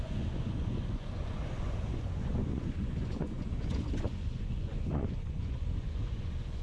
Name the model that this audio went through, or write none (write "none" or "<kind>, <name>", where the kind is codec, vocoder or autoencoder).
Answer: vocoder, Vocos